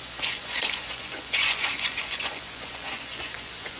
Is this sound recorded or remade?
remade